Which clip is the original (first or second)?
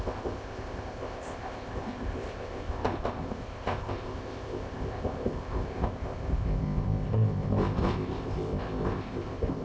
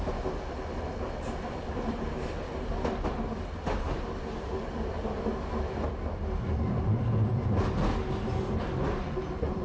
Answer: second